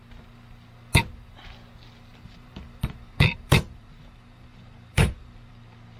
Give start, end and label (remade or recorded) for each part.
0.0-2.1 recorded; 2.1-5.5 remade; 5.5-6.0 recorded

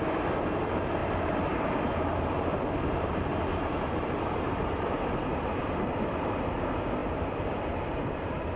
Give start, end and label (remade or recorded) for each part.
0.0-1.0 recorded; 1.0-5.3 remade; 5.3-7.0 recorded; 7.0-8.6 remade

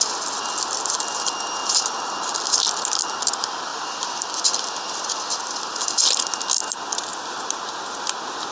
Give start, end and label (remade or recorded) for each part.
0.0-1.6 recorded; 1.6-2.4 remade; 2.4-3.7 recorded; 3.7-4.5 remade; 4.5-8.5 recorded

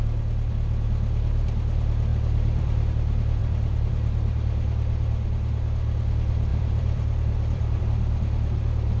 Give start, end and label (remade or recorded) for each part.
0.0-2.1 recorded; 2.1-2.9 remade; 2.9-3.4 recorded; 3.4-3.9 remade; 3.9-6.5 recorded; 6.5-7.8 remade; 7.8-9.0 recorded

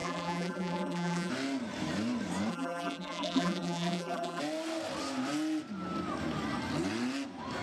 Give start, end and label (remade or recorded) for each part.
0.0-1.3 remade; 1.3-2.5 recorded; 2.5-4.4 remade; 4.4-7.6 recorded

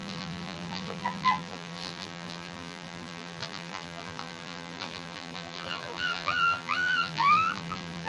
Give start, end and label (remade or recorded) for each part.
0.0-8.1 remade

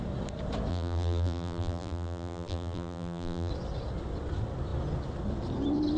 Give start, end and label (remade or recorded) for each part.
0.0-0.7 recorded; 0.7-3.5 remade; 3.5-6.0 recorded